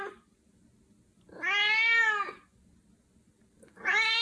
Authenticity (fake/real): real